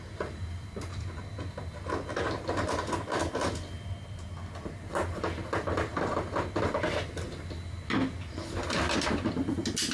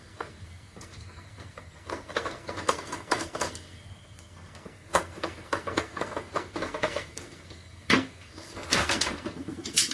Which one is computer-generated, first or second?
second